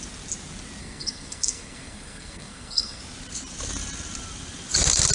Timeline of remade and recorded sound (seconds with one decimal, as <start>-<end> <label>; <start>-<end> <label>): 0.0-0.8 recorded; 0.8-3.0 remade; 3.0-5.1 recorded